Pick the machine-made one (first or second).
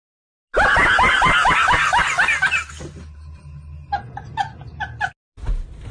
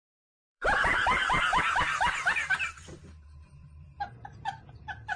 second